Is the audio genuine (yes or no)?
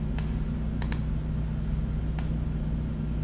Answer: yes